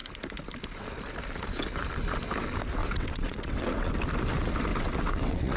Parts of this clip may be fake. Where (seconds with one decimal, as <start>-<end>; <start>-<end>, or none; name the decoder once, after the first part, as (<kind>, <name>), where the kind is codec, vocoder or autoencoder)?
2.8-3.9 (vocoder, WaveNeXt); 4.7-5.6